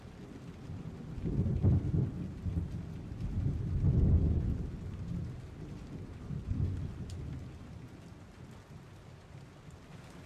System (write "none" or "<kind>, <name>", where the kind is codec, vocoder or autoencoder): none